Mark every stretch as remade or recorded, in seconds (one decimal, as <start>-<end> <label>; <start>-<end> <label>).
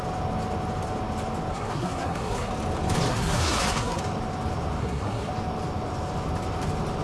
0.0-1.5 recorded; 1.5-2.5 remade; 2.5-3.1 recorded; 3.1-4.0 remade; 4.0-4.8 recorded; 4.8-5.3 remade; 5.3-7.0 recorded